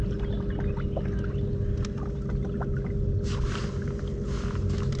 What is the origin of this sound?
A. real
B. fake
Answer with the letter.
A